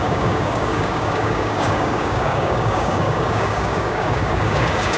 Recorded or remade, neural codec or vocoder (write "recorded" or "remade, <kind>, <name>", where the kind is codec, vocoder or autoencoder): remade, codec, DAC